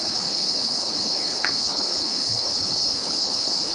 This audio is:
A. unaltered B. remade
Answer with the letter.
B